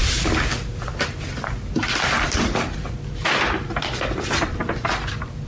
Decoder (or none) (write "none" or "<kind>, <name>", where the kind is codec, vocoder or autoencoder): none